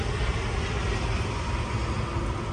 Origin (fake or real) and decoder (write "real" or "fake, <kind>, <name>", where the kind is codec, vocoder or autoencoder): real